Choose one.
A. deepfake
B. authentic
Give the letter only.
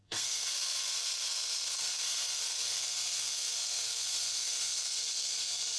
A